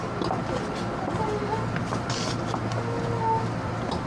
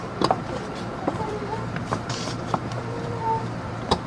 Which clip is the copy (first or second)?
second